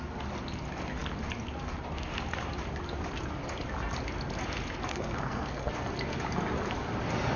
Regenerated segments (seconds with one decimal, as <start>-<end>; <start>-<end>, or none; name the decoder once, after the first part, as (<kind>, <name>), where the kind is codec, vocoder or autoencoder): 4.9-5.7 (codec, SNAC)